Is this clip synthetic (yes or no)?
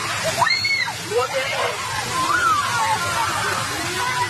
no